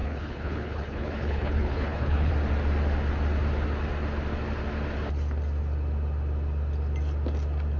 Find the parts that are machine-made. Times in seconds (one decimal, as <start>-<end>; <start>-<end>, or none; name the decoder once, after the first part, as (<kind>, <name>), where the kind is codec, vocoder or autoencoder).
0.0-2.3 (codec, HILCodec)